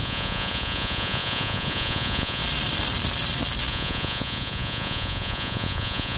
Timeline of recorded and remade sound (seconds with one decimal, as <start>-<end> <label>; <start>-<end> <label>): 0.0-2.4 remade; 2.4-3.7 recorded; 3.7-6.2 remade